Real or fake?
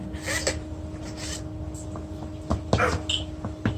real